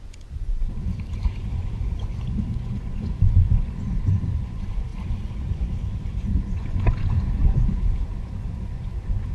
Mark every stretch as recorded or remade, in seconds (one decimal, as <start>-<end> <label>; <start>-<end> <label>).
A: 0.0-9.3 remade